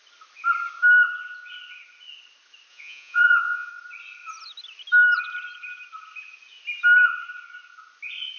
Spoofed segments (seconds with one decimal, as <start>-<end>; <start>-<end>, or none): 2.7-3.7